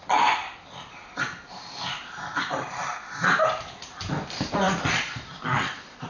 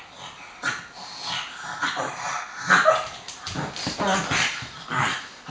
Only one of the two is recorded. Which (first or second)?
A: second